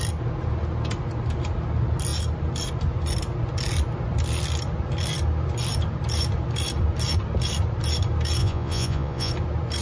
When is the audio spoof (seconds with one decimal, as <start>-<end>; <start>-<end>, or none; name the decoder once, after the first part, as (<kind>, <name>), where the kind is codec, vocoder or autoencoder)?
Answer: 8.4-9.3 (vocoder, Vocos)